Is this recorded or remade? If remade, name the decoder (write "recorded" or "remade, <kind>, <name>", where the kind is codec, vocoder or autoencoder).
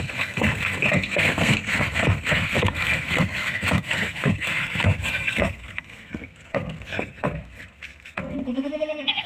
remade, codec, SNAC